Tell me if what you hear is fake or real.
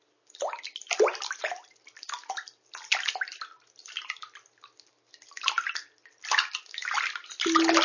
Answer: real